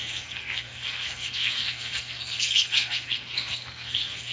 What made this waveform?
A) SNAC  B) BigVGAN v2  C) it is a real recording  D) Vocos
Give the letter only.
A